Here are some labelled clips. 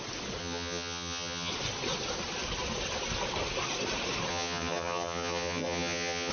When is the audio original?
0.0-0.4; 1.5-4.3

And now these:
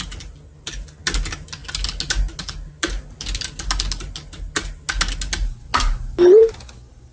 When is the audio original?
0.0-7.1

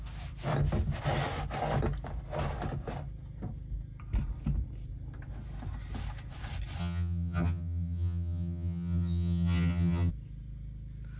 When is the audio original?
0.0-6.8; 10.1-11.2

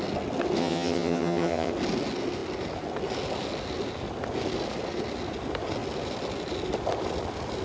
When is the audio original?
0.0-0.6; 1.7-7.6

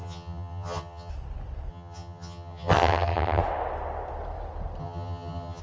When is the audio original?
1.1-1.7; 3.4-4.8

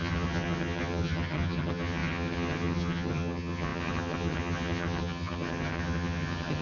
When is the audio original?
none